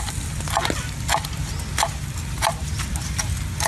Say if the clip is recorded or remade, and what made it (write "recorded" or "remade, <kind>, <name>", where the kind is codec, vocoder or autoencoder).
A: recorded